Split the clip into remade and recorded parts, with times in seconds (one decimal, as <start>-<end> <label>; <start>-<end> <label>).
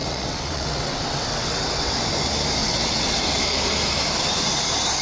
0.0-2.1 remade; 2.1-2.6 recorded; 2.6-3.4 remade; 3.4-5.0 recorded